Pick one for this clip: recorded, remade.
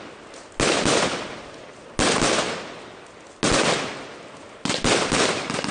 recorded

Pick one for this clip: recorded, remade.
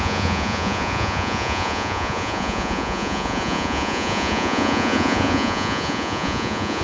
remade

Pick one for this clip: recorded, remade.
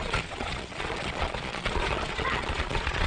remade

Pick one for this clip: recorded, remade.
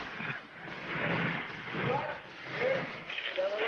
recorded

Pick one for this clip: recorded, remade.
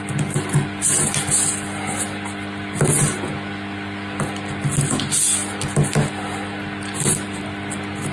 recorded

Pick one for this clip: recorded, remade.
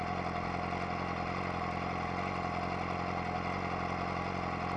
recorded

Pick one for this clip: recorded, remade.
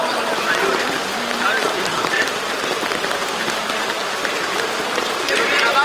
remade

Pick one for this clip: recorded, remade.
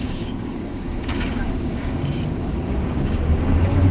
remade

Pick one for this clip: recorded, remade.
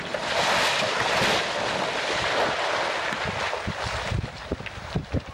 recorded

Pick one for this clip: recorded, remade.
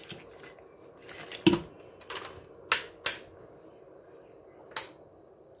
recorded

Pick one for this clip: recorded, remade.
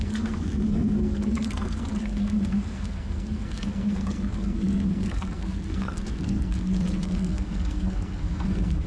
remade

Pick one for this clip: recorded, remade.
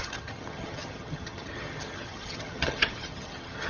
remade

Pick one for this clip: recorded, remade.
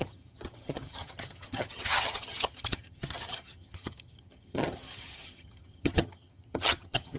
remade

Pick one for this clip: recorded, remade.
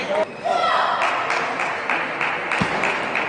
recorded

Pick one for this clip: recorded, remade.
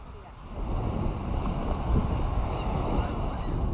recorded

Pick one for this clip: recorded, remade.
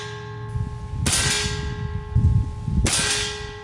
recorded